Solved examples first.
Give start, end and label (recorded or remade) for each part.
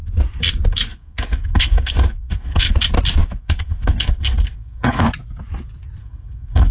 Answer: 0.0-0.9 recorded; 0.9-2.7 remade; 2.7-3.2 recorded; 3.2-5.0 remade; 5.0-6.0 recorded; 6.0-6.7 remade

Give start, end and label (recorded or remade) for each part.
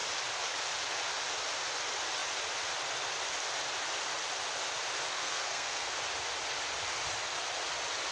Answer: 0.0-5.1 recorded; 5.1-5.9 remade; 5.9-8.1 recorded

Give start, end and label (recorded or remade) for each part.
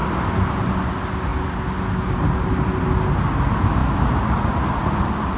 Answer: 0.0-0.7 remade; 0.7-5.4 recorded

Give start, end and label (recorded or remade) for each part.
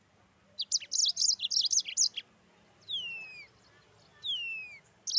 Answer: 0.0-5.2 recorded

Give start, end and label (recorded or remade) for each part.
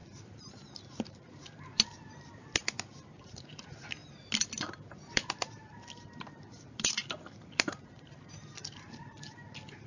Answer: 0.0-1.7 remade; 1.7-3.2 recorded; 3.2-4.0 remade; 4.0-4.7 recorded; 4.7-9.9 remade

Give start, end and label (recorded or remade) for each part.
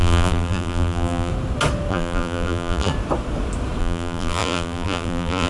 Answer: 0.0-1.3 remade; 1.3-1.9 recorded; 1.9-2.9 remade; 2.9-3.8 recorded; 3.8-5.5 remade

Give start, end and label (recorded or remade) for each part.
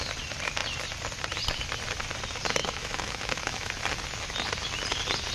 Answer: 0.0-2.6 recorded; 2.6-3.7 remade; 3.7-5.3 recorded